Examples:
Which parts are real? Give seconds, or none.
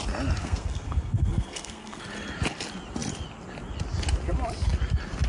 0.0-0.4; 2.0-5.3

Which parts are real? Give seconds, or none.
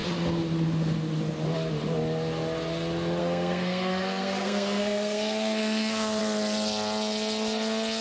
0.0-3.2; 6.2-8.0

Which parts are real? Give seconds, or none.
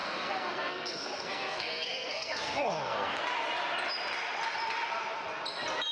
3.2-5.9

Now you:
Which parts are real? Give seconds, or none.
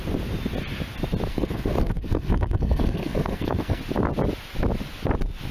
0.0-1.3; 3.8-5.5